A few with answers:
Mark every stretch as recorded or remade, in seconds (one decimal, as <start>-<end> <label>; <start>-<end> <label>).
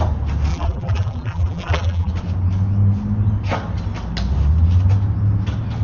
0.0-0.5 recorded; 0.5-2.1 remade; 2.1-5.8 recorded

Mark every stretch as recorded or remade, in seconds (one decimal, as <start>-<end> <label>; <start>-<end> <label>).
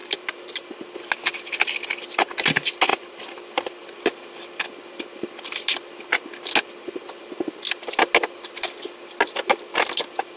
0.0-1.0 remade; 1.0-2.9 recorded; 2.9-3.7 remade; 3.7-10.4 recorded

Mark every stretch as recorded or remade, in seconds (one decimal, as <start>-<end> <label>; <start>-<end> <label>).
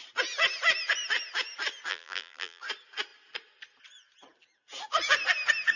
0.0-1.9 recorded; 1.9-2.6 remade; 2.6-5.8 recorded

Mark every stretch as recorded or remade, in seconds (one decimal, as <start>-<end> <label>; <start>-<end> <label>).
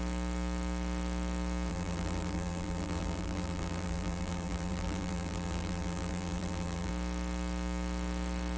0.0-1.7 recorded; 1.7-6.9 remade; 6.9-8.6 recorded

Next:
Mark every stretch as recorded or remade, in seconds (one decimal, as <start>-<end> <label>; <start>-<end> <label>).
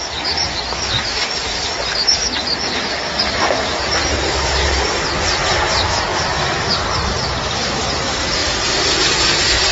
0.0-9.7 recorded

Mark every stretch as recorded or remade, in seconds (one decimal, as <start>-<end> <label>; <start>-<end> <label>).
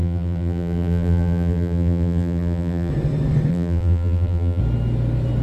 0.0-2.9 remade; 2.9-3.5 recorded; 3.5-4.6 remade; 4.6-5.4 recorded